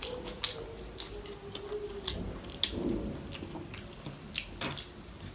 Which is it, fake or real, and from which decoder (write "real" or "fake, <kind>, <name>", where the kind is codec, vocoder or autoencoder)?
real